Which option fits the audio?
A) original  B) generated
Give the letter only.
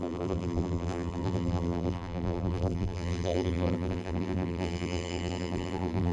B